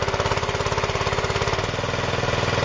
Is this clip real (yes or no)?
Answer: yes